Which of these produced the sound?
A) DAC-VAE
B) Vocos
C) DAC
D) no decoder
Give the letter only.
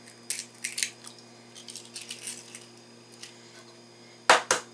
D